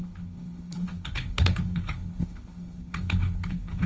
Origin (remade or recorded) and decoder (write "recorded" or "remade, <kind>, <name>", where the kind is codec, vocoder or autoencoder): remade, codec, HILCodec